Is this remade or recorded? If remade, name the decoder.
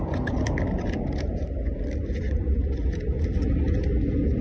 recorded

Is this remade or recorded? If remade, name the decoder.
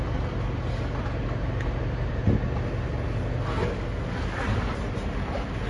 recorded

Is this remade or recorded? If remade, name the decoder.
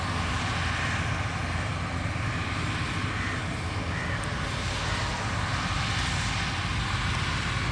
recorded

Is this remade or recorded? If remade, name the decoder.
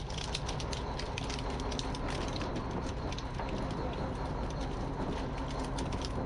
recorded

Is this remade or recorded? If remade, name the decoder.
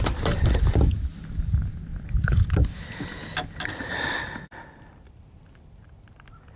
recorded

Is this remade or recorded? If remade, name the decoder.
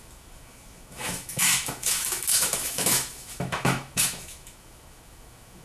remade, autoencoder, DAC-VAE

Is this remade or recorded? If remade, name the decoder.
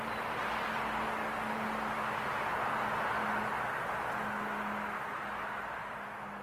recorded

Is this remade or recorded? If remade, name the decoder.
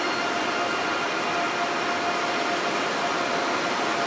recorded